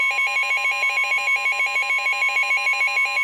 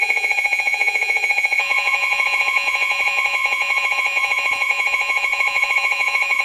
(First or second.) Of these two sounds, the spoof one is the second